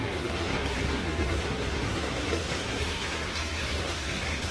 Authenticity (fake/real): fake